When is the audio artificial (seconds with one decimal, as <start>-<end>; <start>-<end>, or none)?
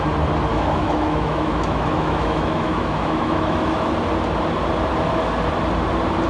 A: 0.5-3.9